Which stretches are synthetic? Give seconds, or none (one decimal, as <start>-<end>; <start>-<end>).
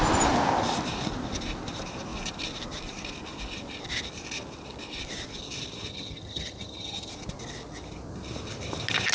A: 5.9-7.1